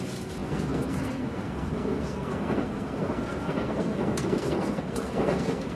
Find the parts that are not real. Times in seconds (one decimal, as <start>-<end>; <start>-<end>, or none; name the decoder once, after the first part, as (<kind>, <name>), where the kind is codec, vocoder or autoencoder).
0.0-5.8 (codec, SNAC)